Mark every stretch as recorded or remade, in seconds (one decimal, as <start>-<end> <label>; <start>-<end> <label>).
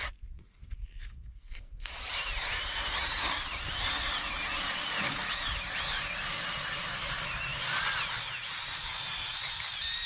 0.0-0.6 recorded; 0.6-1.9 remade; 1.9-10.1 recorded